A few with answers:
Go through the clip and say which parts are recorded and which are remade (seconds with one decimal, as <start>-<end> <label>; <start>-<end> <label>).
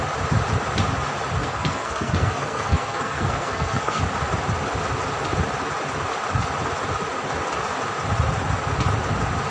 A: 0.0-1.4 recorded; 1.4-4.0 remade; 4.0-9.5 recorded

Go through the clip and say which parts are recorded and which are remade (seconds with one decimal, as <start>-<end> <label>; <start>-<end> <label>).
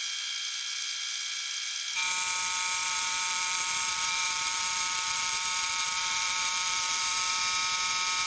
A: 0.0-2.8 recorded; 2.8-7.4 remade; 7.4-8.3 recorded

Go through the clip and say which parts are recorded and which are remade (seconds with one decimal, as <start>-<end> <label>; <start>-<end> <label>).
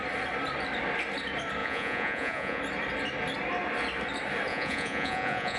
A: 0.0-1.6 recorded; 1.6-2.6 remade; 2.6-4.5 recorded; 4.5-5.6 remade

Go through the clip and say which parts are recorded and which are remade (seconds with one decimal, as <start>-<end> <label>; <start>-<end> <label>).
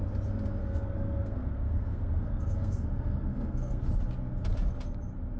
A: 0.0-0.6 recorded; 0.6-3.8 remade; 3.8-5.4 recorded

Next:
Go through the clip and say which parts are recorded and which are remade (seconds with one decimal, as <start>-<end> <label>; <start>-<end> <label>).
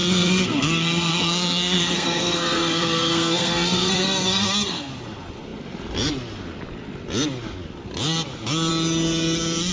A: 0.0-4.9 remade; 4.9-9.7 recorded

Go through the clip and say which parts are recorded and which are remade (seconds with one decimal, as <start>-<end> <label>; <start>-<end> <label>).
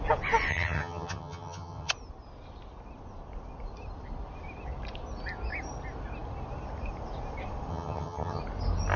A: 0.0-0.5 recorded; 0.5-1.9 remade; 1.9-7.7 recorded; 7.7-8.4 remade; 8.4-9.0 recorded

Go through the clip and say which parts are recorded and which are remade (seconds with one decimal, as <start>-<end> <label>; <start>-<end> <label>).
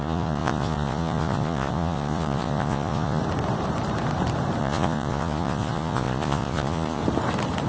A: 0.0-3.2 remade; 3.2-4.6 recorded; 4.6-7.0 remade; 7.0-7.7 recorded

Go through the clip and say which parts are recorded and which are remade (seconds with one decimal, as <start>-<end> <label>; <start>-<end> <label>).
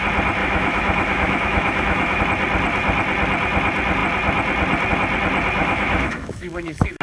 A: 0.0-0.4 recorded; 0.4-2.2 remade; 2.2-5.6 recorded; 5.6-7.0 remade